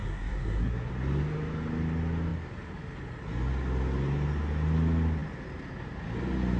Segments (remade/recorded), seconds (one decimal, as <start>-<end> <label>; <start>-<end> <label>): 0.0-0.9 remade; 0.9-6.6 recorded